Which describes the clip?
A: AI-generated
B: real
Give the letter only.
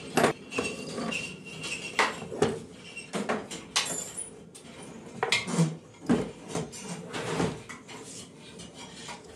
B